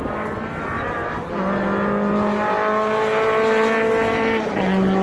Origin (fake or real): real